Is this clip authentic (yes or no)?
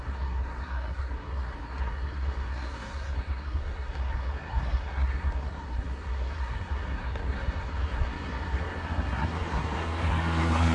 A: no